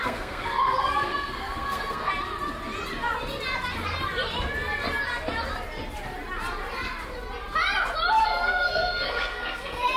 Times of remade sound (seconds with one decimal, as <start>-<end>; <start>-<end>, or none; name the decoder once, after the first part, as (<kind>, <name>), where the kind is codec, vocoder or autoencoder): 0.0-2.1 (codec, SNAC); 8.2-10.0